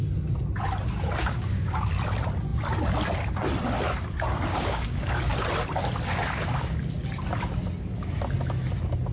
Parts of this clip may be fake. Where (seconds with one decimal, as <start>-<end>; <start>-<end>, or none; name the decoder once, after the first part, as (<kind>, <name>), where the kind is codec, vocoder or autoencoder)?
1.2-1.9 (codec, DAC); 4.5-5.3